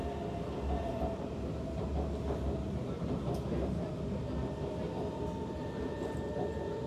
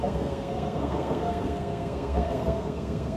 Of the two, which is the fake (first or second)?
second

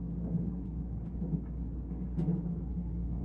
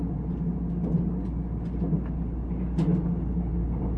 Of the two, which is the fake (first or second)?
first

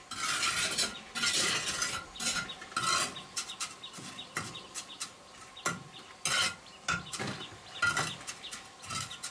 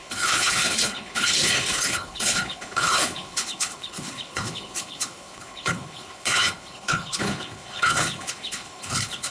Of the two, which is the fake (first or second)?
second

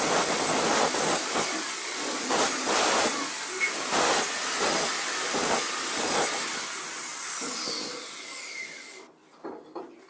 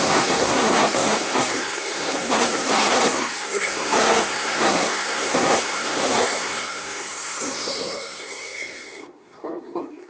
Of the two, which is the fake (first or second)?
second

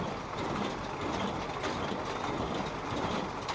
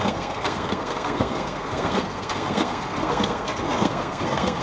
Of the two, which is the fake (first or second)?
second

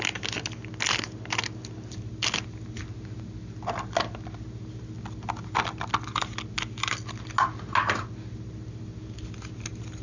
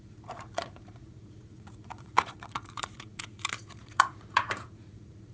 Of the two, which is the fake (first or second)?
second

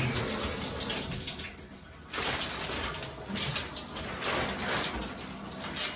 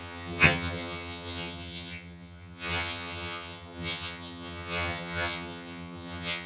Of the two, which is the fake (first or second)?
second